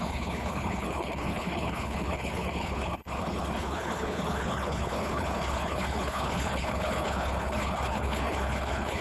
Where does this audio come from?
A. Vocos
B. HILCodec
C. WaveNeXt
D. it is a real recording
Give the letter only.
B